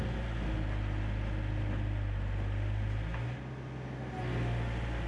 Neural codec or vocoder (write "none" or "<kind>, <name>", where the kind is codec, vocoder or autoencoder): none